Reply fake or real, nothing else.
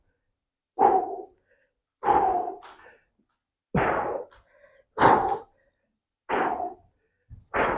real